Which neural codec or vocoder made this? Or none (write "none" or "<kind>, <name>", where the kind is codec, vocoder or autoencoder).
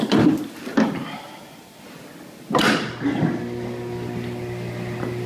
none